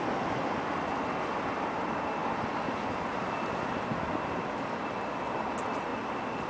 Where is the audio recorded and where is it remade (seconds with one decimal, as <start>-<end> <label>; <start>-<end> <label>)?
0.0-6.5 recorded